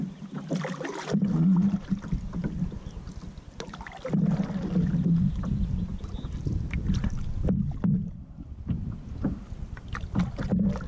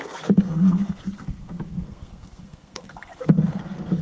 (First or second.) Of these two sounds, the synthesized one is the second